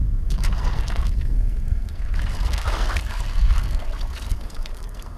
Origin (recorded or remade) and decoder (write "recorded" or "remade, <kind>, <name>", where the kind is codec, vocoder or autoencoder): remade, codec, SNAC